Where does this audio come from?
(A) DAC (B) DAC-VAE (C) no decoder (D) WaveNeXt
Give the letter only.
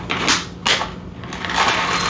C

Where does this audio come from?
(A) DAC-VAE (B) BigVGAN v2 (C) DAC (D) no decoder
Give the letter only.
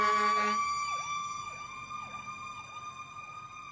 D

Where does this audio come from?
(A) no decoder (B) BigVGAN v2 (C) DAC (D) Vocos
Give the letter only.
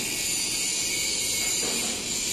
A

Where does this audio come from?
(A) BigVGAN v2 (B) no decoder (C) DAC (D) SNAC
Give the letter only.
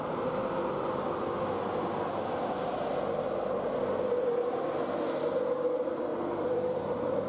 B